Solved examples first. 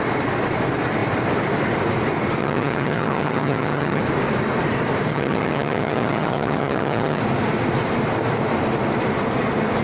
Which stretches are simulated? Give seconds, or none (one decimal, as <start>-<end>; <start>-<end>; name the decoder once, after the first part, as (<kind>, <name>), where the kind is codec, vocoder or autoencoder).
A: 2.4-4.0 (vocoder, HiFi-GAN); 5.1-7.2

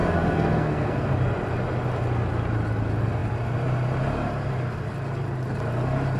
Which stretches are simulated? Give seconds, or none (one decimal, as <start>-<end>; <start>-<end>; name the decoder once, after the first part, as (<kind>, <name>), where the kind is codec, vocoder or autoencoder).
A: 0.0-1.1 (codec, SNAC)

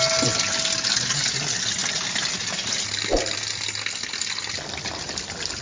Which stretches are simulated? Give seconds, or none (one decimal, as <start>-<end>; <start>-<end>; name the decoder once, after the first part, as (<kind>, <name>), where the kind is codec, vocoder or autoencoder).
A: none

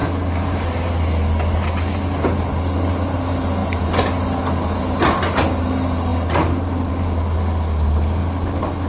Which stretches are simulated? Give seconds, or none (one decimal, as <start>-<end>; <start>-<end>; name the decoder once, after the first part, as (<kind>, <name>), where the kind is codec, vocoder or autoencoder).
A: none

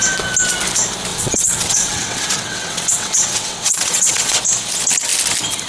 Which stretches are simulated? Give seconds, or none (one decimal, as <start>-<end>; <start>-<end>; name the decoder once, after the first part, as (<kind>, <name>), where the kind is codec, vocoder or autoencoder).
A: 1.1-4.4 (vocoder, WaveNeXt)

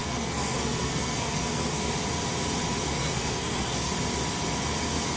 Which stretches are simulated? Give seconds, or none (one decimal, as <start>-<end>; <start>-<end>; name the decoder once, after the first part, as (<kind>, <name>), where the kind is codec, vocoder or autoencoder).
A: 0.0-1.9 (codec, SNAC); 3.0-3.9

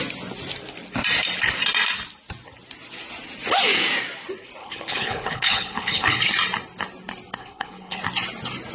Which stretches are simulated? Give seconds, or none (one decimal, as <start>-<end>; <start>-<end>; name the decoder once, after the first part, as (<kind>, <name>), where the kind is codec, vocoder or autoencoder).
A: 4.6-6.2 (codec, HILCodec); 7.4-8.0

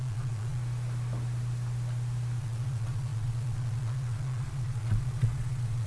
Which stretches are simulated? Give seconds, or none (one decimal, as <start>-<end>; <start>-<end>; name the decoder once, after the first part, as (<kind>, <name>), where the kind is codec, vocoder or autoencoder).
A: 0.0-0.6 (vocoder, Vocos); 2.4-5.9